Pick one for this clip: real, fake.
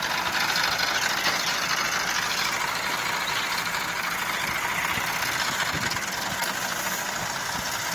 real